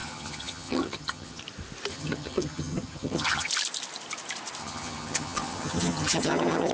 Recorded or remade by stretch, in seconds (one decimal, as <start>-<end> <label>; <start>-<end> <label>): 0.0-1.4 remade; 1.4-1.9 recorded; 1.9-3.5 remade; 3.5-4.6 recorded; 4.6-6.7 remade

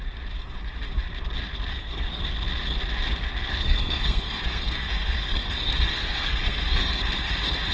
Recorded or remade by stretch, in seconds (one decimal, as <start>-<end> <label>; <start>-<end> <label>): 0.0-1.7 recorded; 1.7-2.2 remade; 2.2-3.5 recorded; 3.5-7.0 remade; 7.0-7.7 recorded

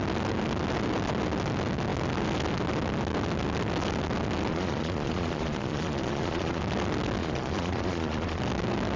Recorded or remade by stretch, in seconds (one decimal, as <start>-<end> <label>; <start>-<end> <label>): 0.0-4.5 recorded; 4.5-6.6 remade; 6.6-7.2 recorded; 7.2-8.4 remade; 8.4-9.0 recorded

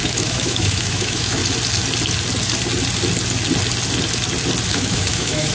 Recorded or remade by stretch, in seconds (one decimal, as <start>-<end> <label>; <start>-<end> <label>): 0.0-1.4 remade; 1.4-4.7 recorded; 4.7-5.5 remade